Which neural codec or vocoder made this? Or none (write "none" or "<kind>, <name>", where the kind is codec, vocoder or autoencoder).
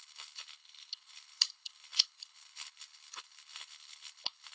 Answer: codec, HILCodec